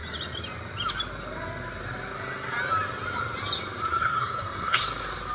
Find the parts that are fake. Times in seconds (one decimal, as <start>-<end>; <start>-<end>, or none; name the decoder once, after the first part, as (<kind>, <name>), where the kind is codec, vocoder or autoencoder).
4.0-4.8 (codec, SNAC)